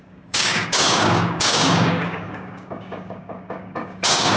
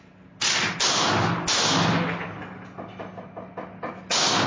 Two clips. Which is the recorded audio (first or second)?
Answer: second